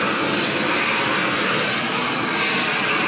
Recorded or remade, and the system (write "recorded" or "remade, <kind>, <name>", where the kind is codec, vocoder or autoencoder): recorded